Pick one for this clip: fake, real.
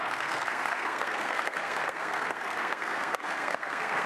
fake